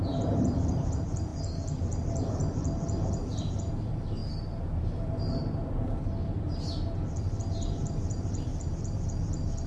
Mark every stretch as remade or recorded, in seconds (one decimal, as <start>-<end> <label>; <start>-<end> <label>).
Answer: 0.0-1.3 remade; 1.3-3.5 recorded; 3.5-4.2 remade; 4.2-7.5 recorded; 7.5-8.5 remade; 8.5-9.7 recorded